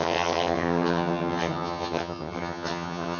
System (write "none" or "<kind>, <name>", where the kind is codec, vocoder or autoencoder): vocoder, HiFi-GAN